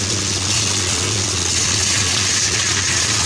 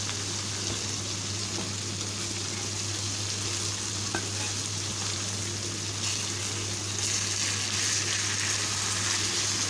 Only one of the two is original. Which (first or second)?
second